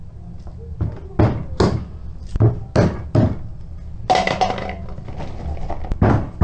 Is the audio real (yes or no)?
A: yes